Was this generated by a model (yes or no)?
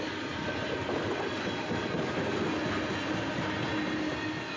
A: no